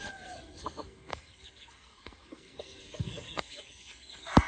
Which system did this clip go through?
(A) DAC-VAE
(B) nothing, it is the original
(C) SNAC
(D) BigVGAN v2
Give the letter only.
C